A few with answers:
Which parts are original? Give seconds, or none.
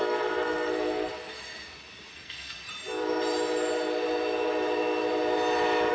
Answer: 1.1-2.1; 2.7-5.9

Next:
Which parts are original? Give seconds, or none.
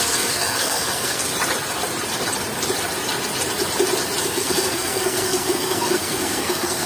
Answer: 1.3-4.2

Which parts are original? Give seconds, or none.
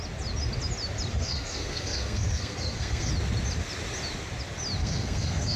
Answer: 0.0-1.1; 3.1-4.8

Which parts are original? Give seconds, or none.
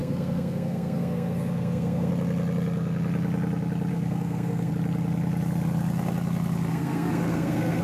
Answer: 2.1-3.9; 4.7-6.7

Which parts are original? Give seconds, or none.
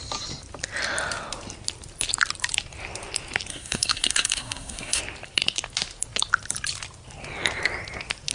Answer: 0.0-3.5; 5.0-8.3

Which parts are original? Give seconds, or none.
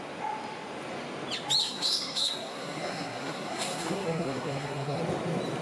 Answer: 0.0-1.6; 5.0-5.6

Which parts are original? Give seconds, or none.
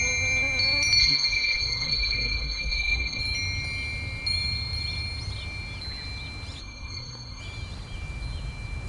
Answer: 0.0-1.0; 3.2-6.6; 7.4-8.9